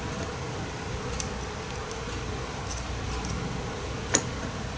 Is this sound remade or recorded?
recorded